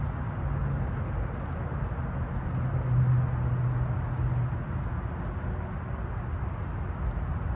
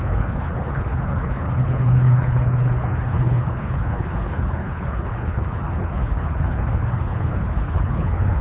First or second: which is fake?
second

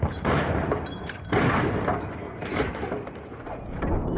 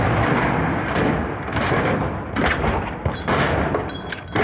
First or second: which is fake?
first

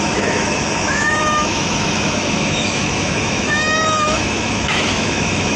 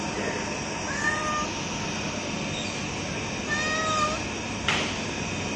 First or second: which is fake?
first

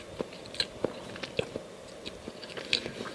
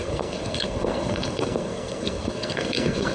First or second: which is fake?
second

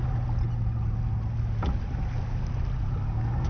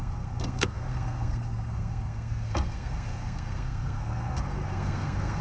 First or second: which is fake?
second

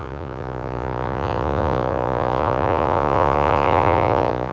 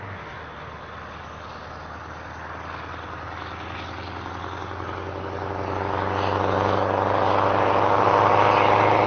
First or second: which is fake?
first